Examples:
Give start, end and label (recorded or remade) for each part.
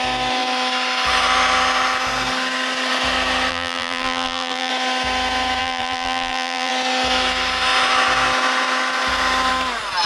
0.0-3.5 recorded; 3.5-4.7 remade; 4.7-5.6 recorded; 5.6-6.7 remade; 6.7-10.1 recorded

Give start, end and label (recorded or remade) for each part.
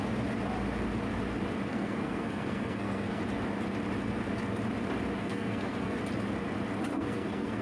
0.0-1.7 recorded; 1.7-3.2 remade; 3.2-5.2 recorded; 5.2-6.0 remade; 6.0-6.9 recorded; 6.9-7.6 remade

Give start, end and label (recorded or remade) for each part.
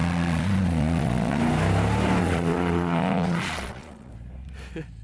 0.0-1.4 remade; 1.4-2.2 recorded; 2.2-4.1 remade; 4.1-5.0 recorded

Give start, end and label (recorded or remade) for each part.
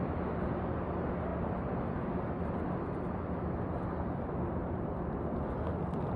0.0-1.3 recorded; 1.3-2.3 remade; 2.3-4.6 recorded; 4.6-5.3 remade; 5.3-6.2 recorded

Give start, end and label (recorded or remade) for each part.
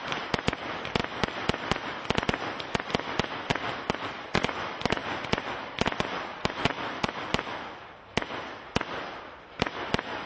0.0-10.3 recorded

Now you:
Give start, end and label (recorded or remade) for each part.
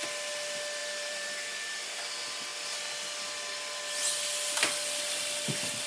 0.0-0.8 recorded; 0.8-1.8 remade; 1.8-5.9 recorded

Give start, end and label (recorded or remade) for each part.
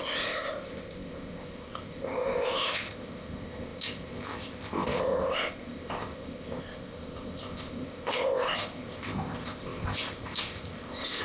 0.0-11.2 remade